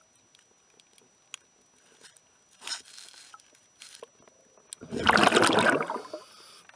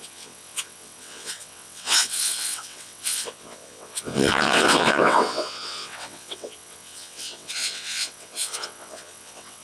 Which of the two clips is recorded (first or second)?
first